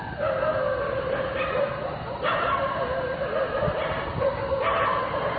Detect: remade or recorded recorded